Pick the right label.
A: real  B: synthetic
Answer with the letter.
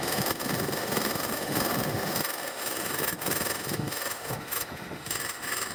B